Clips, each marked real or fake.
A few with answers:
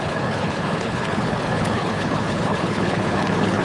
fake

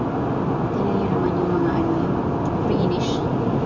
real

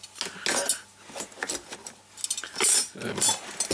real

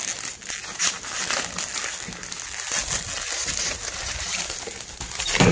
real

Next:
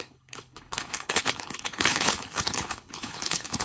fake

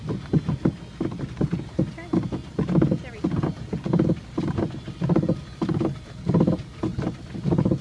real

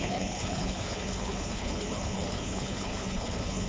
fake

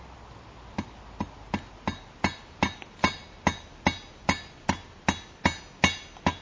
real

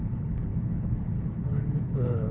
fake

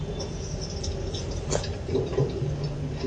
real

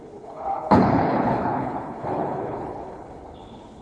fake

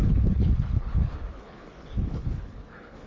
fake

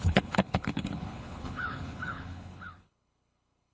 fake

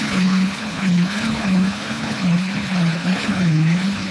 fake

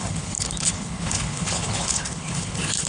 fake